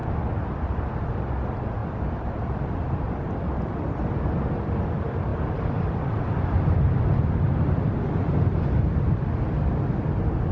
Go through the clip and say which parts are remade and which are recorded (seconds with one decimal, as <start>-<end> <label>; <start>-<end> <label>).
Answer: 0.0-10.5 recorded